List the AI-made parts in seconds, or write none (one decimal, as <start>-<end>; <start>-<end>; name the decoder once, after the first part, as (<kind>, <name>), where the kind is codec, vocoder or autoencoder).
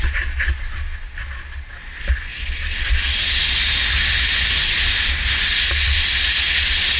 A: none